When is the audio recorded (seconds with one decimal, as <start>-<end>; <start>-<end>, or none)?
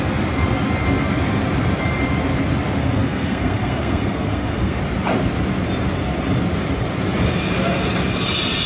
0.0-2.8; 4.8-8.7